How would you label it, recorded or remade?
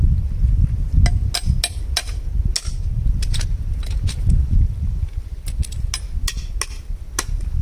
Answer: recorded